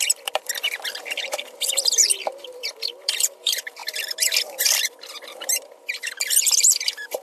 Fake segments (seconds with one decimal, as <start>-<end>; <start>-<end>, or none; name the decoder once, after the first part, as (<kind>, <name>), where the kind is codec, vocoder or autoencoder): 0.0-7.2 (vocoder, BigVGAN v2)